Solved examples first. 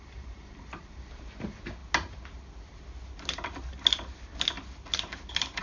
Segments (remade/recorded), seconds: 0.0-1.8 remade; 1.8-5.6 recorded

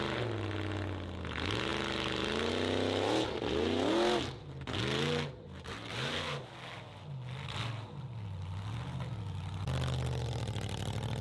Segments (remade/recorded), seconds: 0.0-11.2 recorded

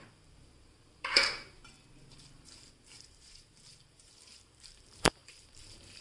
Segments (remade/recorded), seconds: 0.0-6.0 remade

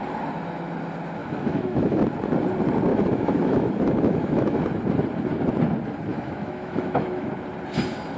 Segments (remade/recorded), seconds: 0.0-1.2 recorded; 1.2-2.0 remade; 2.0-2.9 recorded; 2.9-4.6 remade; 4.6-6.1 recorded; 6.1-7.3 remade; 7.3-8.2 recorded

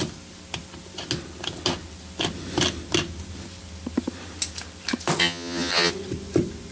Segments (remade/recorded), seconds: 0.0-5.2 recorded; 5.2-5.9 remade; 5.9-6.7 recorded

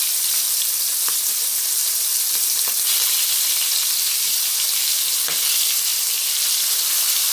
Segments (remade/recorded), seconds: 0.0-1.8 recorded; 1.8-3.2 remade; 3.2-7.3 recorded